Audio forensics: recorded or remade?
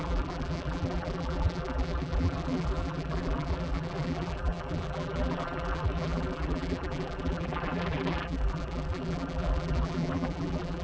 remade